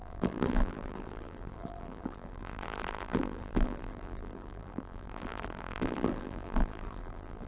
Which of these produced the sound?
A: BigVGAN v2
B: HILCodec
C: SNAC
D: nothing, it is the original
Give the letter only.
A